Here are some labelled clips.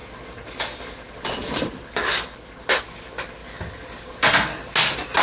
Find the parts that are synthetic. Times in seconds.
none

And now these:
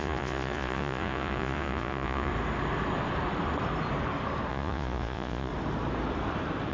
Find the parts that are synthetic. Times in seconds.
0.0-2.3 (vocoder, Vocos); 4.5-5.5

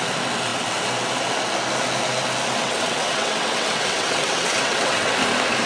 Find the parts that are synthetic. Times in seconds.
2.6-5.1 (vocoder, WaveNeXt)

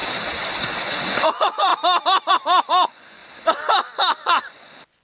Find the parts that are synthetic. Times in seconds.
0.8-1.7 (vocoder, Vocos); 2.3-3.2; 4.2-5.0

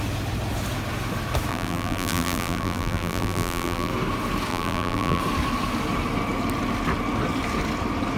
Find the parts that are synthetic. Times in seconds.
1.5-3.9 (vocoder, BigVGAN v2); 4.5-5.2